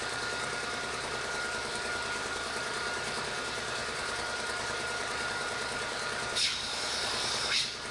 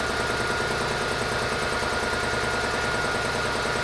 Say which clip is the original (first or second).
second